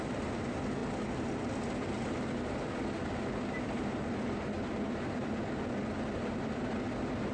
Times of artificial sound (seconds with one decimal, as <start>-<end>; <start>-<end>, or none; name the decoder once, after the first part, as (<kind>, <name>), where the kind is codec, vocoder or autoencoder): none